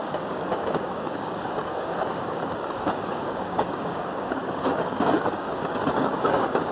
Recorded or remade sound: remade